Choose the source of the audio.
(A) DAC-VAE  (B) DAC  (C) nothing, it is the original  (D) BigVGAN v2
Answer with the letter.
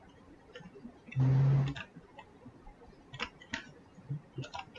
C